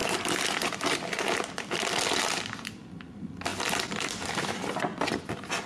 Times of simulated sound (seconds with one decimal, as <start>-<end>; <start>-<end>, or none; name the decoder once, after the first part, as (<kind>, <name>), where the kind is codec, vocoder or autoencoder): 3.5-4.6 (vocoder, BigVGAN v2)